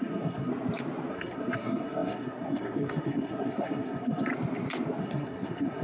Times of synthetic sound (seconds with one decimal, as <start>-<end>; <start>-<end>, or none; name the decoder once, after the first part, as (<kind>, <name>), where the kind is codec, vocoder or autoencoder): 0.0-0.5 (codec, SNAC); 1.1-4.3; 5.0-5.8